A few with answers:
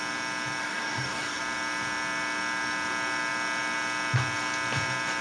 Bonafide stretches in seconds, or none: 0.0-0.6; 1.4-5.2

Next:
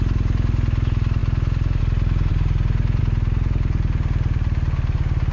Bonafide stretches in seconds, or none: 0.0-5.3

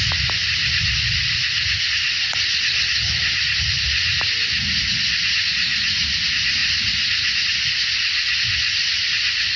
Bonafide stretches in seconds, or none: 0.0-9.6

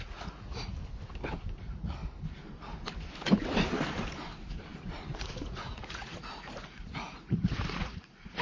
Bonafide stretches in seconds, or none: 0.8-1.6; 2.0-5.2

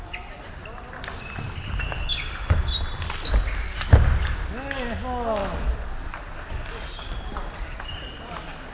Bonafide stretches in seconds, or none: 0.0-8.7